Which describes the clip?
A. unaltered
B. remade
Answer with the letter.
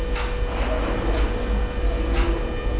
A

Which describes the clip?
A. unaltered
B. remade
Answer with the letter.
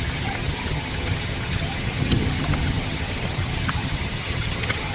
B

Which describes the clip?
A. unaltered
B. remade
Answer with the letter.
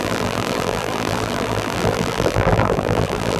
B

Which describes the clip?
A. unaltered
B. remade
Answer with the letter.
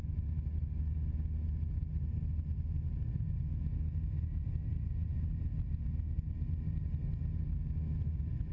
A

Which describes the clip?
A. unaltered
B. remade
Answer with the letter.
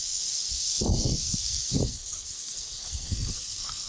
B